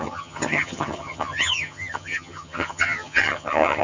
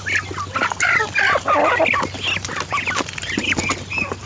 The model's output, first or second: first